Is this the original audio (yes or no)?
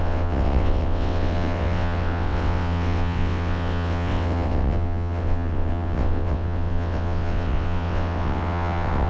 no